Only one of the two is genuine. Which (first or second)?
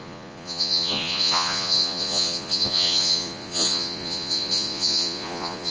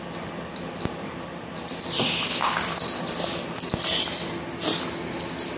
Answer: second